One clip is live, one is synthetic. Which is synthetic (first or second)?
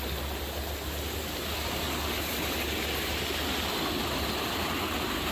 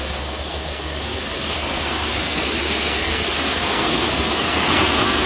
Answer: second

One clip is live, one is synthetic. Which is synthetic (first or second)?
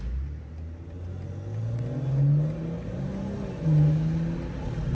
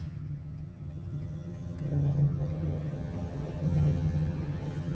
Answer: second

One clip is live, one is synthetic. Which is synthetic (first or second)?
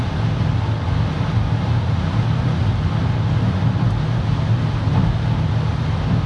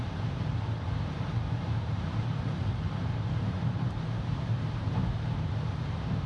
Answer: second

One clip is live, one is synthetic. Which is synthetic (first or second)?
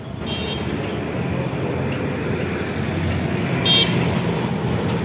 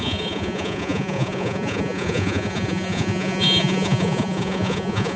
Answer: second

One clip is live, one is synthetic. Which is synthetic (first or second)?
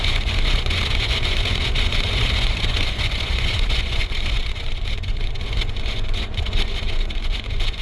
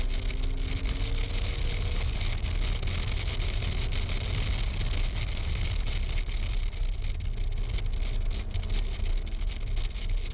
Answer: first